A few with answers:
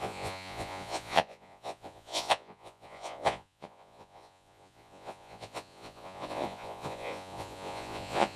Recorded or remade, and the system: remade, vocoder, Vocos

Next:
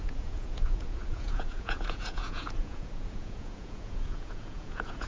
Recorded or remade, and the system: remade, vocoder, Vocos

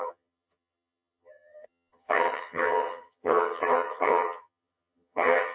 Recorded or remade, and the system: remade, vocoder, HiFi-GAN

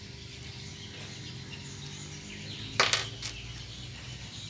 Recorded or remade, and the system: recorded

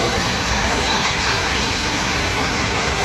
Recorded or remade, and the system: remade, codec, SNAC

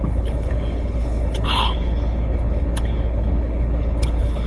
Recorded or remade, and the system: remade, codec, HILCodec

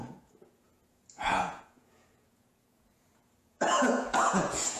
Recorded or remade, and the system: remade, vocoder, Vocos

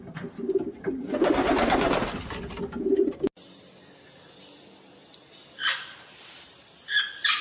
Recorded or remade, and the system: recorded